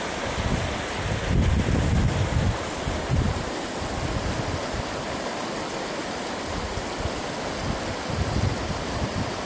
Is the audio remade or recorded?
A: recorded